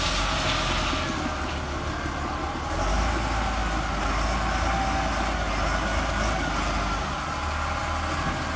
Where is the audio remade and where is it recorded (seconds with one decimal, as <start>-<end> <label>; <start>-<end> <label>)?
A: 0.0-8.6 recorded